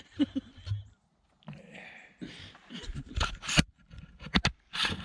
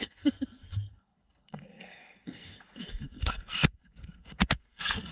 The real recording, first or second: first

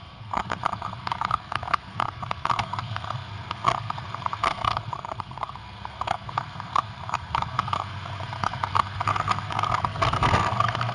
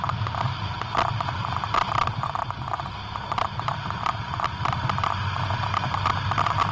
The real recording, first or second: second